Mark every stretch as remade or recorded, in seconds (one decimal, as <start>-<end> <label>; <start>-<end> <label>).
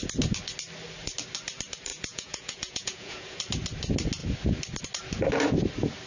0.0-1.9 recorded; 1.9-3.4 remade; 3.4-6.1 recorded